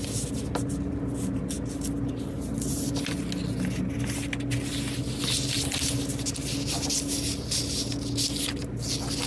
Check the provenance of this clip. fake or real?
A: real